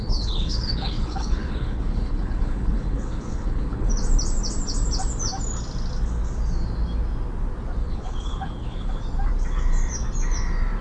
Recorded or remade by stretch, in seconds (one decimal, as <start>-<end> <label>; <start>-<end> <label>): 0.0-3.9 remade; 3.9-7.8 recorded; 7.8-8.9 remade; 8.9-10.8 recorded